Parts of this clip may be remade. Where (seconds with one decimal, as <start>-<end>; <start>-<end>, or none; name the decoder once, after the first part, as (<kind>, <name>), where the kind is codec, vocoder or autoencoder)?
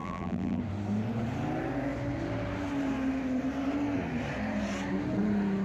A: 0.0-0.6 (vocoder, BigVGAN v2)